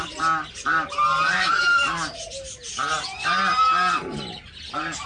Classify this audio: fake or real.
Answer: real